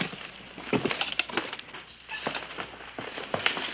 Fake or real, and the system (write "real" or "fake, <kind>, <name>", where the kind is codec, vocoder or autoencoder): real